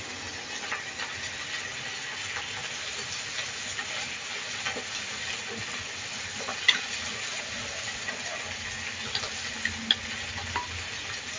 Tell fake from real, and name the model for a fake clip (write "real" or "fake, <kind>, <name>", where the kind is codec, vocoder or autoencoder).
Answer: real